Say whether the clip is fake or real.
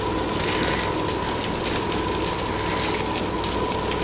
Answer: real